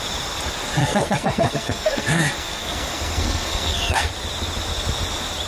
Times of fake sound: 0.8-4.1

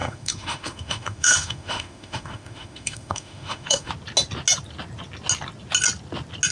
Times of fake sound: 0.0-3.9

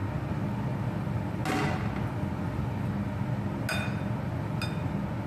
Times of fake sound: none